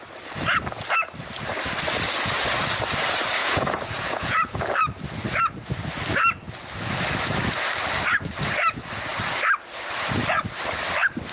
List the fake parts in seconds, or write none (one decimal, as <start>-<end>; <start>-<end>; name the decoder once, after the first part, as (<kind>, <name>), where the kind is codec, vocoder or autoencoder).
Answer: 3.4-4.6 (vocoder, Vocos)